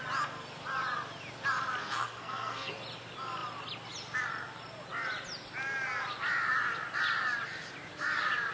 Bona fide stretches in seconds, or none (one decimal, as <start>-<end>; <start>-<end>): 0.0-1.8; 2.7-8.5